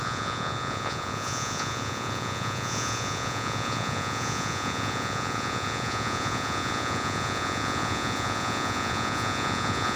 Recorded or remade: remade